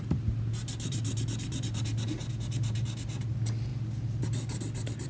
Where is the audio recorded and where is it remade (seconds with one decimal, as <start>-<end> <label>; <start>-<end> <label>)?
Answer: 0.0-5.1 recorded